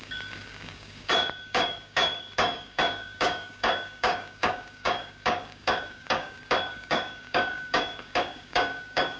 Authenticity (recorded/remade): remade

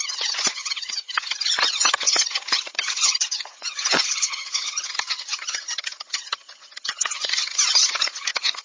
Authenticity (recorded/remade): remade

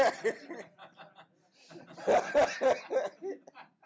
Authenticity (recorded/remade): recorded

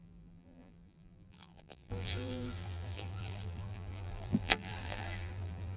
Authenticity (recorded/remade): remade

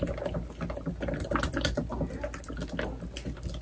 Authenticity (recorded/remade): recorded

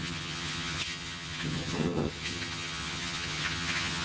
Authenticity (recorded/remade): remade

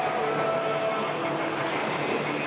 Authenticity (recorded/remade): recorded